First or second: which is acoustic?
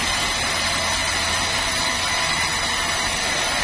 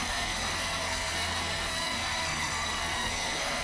first